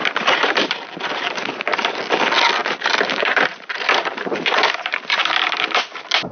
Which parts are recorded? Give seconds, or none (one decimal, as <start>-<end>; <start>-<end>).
2.0-2.6; 5.8-6.3